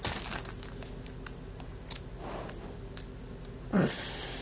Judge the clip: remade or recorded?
recorded